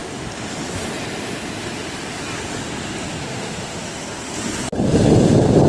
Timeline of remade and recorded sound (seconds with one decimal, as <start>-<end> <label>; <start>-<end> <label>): 0.0-3.2 recorded; 3.2-3.8 remade; 3.8-5.7 recorded